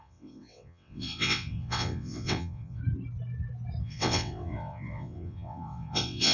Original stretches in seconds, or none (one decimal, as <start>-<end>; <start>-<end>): 2.8-3.8